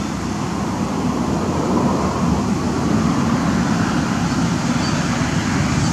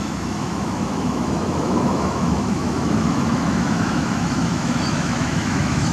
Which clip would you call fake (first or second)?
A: second